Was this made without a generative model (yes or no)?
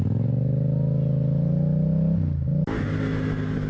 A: yes